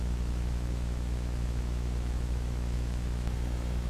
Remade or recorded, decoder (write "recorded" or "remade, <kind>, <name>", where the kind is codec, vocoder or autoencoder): remade, autoencoder, DAC-VAE